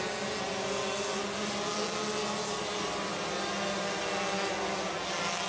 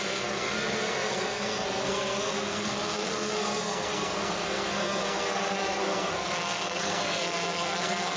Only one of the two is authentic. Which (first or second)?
first